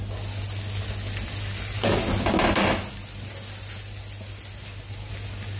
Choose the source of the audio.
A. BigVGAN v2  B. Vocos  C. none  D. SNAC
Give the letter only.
C